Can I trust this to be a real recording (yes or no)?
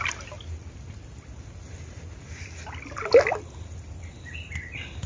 yes